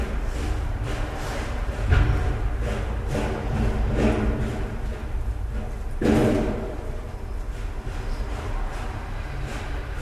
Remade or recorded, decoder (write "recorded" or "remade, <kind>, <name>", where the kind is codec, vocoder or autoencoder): recorded